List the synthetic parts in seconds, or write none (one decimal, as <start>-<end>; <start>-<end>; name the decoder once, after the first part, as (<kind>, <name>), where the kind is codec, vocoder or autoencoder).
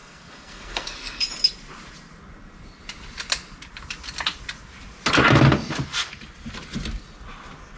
0.0-1.2 (codec, SNAC)